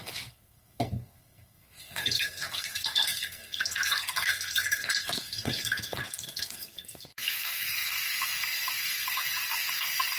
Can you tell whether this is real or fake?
fake